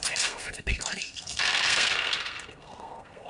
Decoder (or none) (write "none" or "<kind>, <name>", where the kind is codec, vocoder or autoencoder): codec, SNAC